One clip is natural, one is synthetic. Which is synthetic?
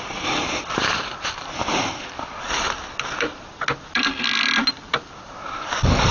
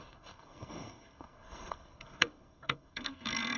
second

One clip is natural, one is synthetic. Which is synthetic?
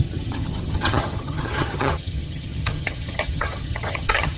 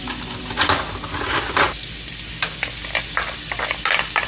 first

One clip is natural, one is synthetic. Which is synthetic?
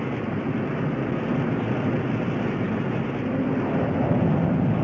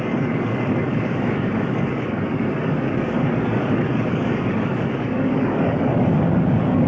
second